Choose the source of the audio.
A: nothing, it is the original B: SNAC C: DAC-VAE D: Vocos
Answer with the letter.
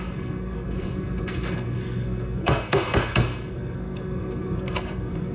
B